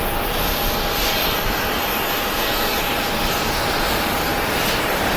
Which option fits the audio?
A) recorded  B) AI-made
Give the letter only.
A